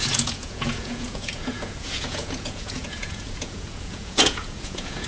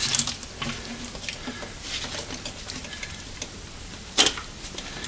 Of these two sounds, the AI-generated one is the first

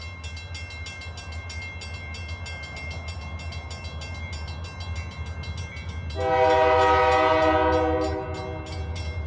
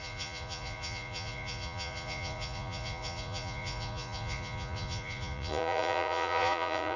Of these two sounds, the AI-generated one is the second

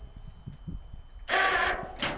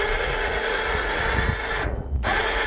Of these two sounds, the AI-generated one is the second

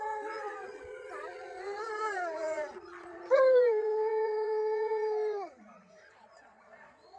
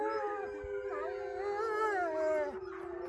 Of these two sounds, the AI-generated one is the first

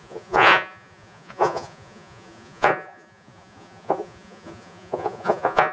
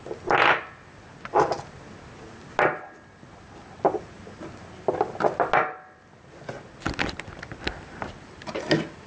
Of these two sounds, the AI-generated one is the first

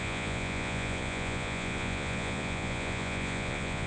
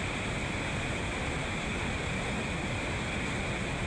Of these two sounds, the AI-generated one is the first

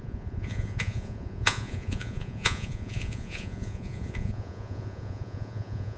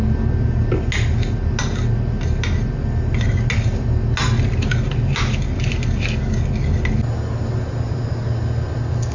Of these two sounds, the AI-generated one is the first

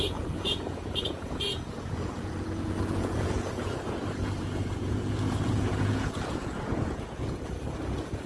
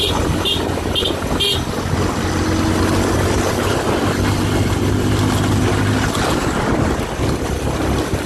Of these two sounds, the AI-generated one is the first